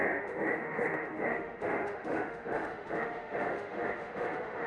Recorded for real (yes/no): no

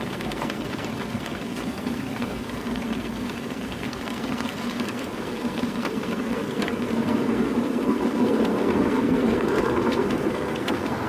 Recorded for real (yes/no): no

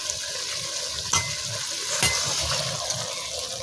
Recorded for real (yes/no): yes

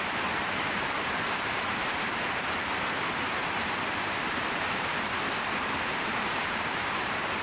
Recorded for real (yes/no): no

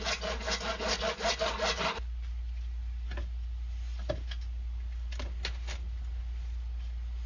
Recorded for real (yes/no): yes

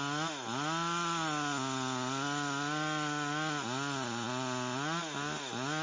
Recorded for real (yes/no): yes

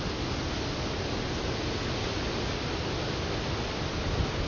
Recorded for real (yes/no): yes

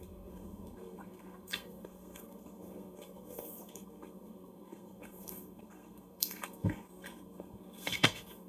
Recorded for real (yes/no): no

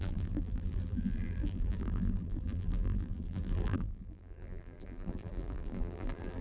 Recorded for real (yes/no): no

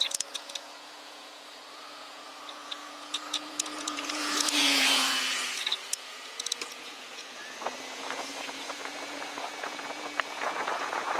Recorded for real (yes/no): no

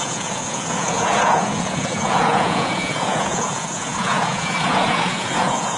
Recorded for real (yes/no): no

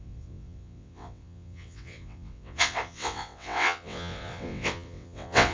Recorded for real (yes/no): no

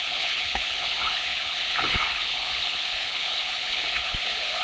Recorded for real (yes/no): no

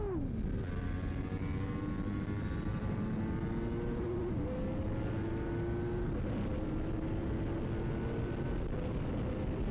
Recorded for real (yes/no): yes